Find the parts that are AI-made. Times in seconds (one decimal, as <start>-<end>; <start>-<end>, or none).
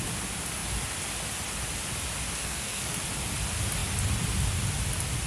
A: 2.4-3.0